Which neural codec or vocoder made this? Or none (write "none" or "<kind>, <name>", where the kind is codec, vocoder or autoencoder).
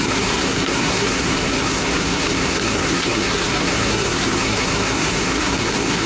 codec, SNAC